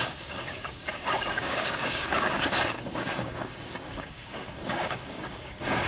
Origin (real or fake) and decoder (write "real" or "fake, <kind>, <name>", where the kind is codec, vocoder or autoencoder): fake, codec, DAC